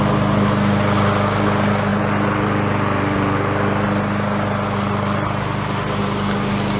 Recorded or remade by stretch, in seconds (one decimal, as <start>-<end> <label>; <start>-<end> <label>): 0.0-6.8 recorded